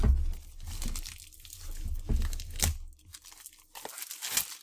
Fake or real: real